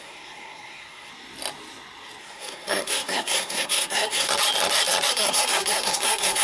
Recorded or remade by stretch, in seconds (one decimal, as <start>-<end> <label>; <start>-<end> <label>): 0.0-1.1 remade; 1.1-2.2 recorded; 2.2-4.3 remade; 4.3-5.1 recorded; 5.1-6.4 remade